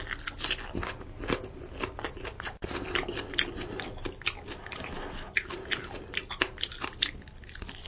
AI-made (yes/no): no